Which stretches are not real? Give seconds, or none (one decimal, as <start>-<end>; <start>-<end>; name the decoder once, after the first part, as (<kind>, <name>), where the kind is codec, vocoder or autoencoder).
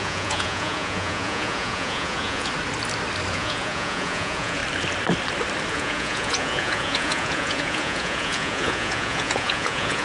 0.0-2.5 (vocoder, Vocos); 3.3-4.6; 5.7-10.0